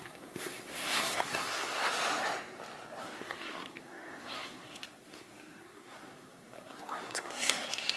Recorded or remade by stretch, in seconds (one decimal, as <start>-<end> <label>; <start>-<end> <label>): 0.0-1.8 remade; 1.8-3.0 recorded; 3.0-8.0 remade